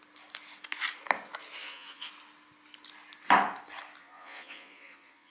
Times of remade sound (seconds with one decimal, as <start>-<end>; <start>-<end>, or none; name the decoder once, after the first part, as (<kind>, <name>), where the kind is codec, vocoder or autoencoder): 1.6-2.1 (vocoder, Vocos); 4.0-5.3